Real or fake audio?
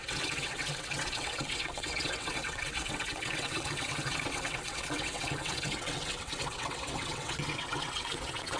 fake